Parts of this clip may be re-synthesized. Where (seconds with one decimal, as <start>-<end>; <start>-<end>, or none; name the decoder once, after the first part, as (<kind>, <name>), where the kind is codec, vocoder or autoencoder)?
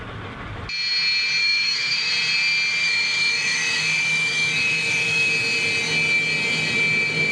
1.4-2.1 (autoencoder, DAC-VAE); 2.8-5.3